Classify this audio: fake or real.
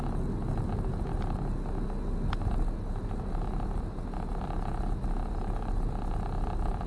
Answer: real